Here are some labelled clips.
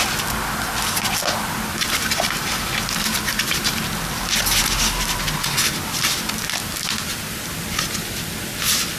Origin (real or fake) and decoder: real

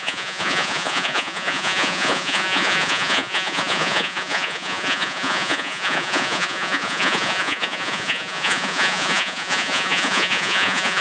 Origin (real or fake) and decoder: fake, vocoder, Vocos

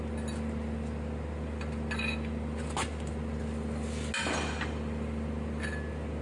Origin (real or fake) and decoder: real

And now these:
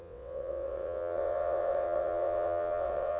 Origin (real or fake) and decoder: fake, vocoder, WaveNeXt